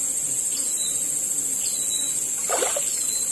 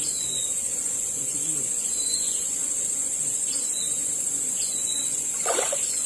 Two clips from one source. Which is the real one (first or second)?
first